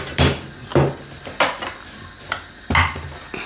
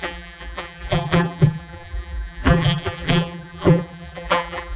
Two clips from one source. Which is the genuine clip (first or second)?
first